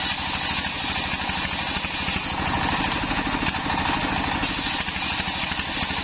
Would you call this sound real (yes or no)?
yes